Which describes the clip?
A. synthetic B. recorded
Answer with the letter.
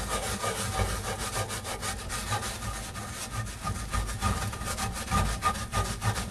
B